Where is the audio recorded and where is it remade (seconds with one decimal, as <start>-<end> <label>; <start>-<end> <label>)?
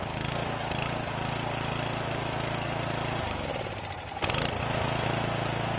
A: 0.0-5.8 recorded